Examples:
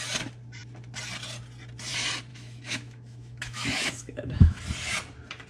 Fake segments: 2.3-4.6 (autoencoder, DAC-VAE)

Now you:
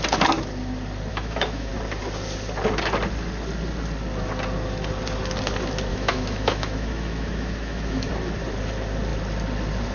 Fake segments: 1.1-1.7 (autoencoder, DAC-VAE); 5.9-8.1

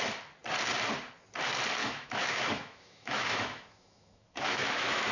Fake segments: 1.8-5.1 (autoencoder, DAC-VAE)

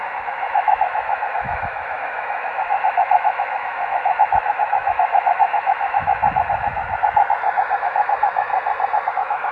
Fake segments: 0.0-6.2 (autoencoder, DAC-VAE); 7.8-8.5; 9.1-9.5

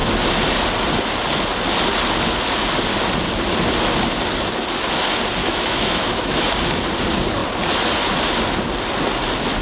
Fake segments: 5.4-6.5 (autoencoder, DAC-VAE)

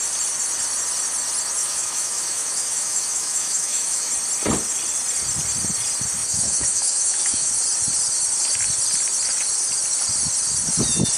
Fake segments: 1.6-4.1 (autoencoder, DAC-VAE); 6.2-7.5

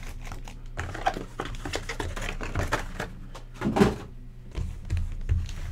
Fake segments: none

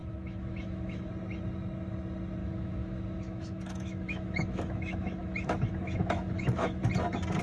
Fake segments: 0.0-1.1 (autoencoder, DAC-VAE); 2.4-6.8